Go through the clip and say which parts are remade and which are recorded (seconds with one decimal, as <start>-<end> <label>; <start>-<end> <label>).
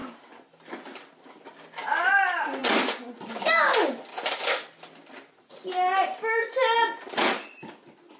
0.0-8.2 recorded